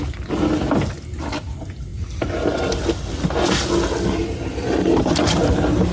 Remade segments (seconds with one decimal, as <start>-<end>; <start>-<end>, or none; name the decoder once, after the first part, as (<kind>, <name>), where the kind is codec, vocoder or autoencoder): none